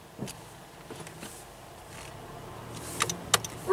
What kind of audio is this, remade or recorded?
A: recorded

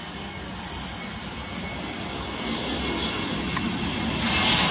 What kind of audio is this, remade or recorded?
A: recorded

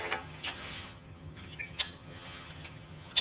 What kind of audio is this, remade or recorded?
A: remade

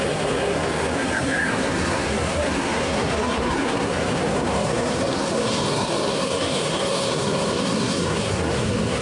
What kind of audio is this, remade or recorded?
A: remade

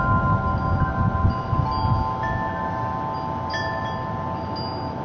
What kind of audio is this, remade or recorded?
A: recorded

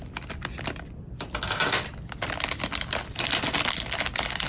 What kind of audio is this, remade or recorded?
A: recorded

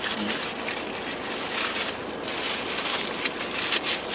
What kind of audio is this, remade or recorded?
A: recorded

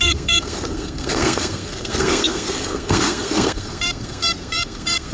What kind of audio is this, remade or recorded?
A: remade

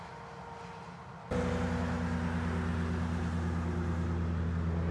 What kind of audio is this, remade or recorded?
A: recorded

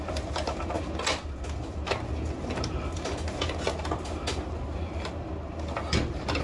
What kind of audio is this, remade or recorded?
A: recorded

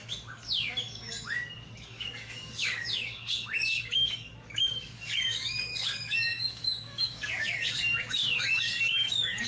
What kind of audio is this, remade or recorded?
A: remade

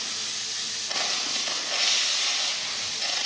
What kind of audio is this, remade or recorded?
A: recorded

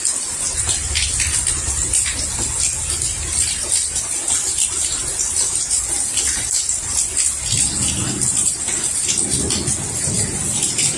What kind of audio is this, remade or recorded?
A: recorded